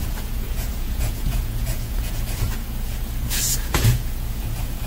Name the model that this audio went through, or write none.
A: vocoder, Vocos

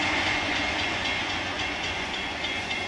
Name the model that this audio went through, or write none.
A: vocoder, Vocos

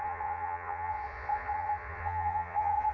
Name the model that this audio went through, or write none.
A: vocoder, Vocos